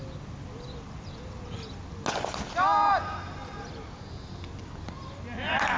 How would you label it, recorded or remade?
recorded